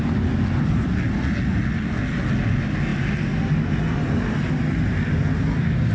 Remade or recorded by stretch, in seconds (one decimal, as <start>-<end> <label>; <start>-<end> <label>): 0.0-5.9 recorded